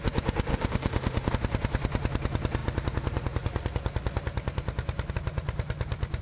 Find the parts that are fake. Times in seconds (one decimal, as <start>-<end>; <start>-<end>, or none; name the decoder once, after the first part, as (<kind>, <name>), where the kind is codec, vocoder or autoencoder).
0.5-1.3 (autoencoder, DAC-VAE)